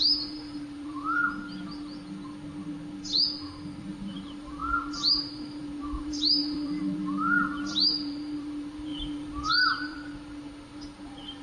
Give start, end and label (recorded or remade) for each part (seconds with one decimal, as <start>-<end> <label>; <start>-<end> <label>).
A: 0.0-1.2 remade; 1.2-3.8 recorded; 3.8-8.9 remade; 8.9-9.5 recorded; 9.5-11.4 remade